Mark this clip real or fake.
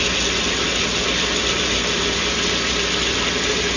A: real